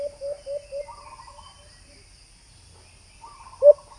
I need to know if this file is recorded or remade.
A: recorded